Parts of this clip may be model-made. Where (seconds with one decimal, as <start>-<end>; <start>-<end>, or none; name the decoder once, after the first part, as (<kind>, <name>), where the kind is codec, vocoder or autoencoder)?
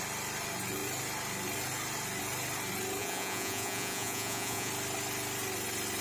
3.0-4.7 (vocoder, Vocos)